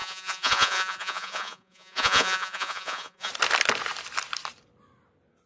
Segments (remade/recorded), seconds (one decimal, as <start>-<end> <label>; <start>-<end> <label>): 0.0-3.3 remade; 3.3-5.5 recorded